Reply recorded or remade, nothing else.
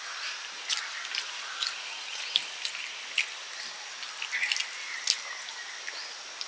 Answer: recorded